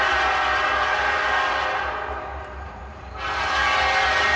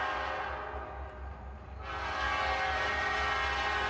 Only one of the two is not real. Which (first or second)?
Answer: first